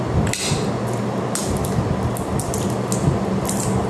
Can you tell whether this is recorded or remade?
recorded